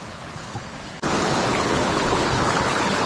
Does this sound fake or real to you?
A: fake